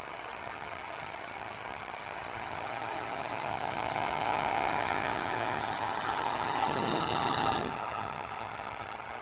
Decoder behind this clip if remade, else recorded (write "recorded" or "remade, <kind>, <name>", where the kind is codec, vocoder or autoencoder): remade, vocoder, HiFi-GAN